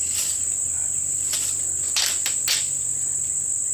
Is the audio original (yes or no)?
yes